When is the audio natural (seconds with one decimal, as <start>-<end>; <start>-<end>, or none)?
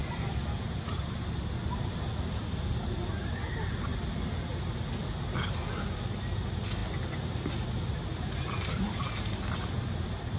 0.0-10.4